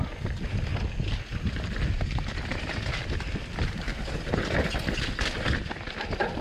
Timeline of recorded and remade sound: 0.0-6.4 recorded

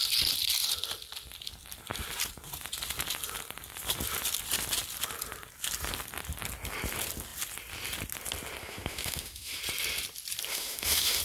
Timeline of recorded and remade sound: 0.0-8.6 recorded; 8.6-9.6 remade; 9.6-10.5 recorded; 10.5-11.2 remade

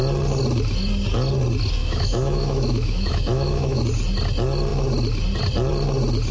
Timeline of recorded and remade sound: 0.0-1.8 recorded; 1.8-3.8 remade; 3.8-6.3 recorded

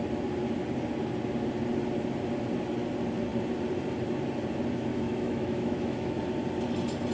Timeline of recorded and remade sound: 0.0-4.9 recorded; 4.9-6.2 remade; 6.2-7.1 recorded